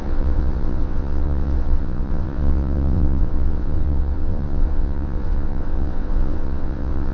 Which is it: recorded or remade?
remade